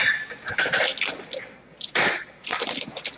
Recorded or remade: recorded